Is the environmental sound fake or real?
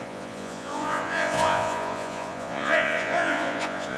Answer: fake